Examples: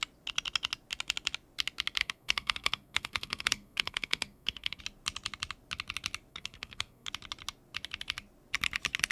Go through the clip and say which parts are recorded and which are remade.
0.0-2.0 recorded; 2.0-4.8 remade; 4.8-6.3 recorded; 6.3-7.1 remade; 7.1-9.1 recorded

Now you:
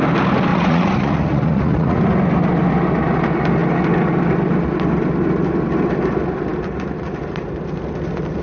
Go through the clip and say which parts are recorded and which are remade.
0.0-0.5 recorded; 0.5-2.0 remade; 2.0-8.4 recorded